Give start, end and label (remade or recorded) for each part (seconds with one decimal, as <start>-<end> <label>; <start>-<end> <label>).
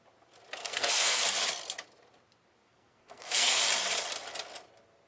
0.0-0.6 recorded; 0.6-1.2 remade; 1.2-2.6 recorded; 2.6-3.6 remade; 3.6-5.1 recorded